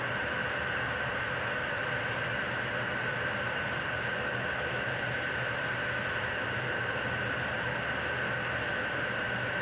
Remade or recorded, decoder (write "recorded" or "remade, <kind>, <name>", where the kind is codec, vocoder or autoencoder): recorded